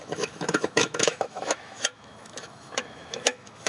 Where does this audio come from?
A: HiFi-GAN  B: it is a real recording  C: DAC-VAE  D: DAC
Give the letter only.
C